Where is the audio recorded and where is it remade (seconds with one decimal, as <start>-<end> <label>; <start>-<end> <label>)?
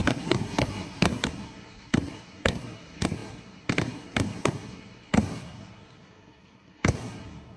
0.0-7.6 remade